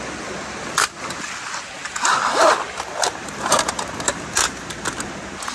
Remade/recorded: recorded